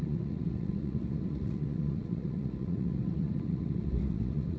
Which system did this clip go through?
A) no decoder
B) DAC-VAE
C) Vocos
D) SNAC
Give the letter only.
C